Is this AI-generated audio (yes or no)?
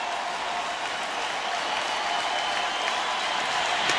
no